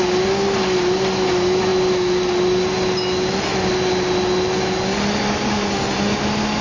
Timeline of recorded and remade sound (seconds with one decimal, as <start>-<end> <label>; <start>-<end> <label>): 0.0-6.6 recorded